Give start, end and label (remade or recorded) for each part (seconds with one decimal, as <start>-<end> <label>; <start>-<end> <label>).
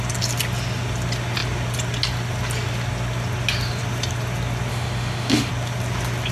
0.0-4.7 recorded; 4.7-5.5 remade; 5.5-6.3 recorded